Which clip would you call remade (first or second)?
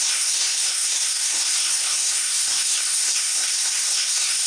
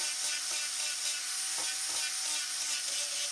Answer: first